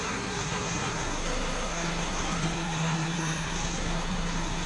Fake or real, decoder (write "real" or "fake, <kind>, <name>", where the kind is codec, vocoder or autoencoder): fake, codec, SNAC